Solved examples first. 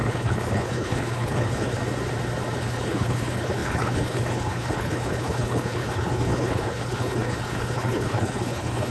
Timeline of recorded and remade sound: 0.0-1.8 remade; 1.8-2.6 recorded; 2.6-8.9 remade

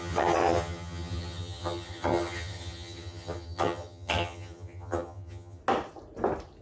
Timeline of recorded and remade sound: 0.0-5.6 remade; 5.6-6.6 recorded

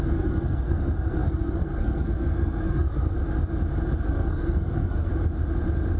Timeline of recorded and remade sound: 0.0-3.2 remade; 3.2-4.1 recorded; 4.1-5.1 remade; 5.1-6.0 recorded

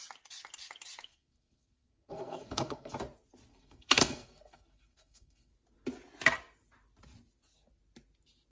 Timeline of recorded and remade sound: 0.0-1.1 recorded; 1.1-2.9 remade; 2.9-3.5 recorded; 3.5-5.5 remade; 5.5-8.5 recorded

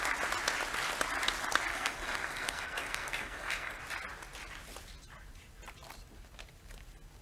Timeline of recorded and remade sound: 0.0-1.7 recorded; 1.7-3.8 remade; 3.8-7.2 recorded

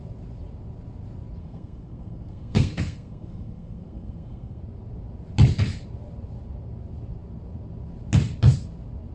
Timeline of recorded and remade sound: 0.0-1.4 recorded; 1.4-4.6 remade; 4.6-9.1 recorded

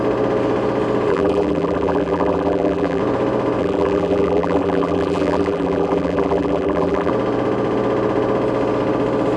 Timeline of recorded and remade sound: 0.0-1.1 recorded; 1.1-3.0 remade; 3.0-3.6 recorded; 3.6-7.1 remade; 7.1-9.4 recorded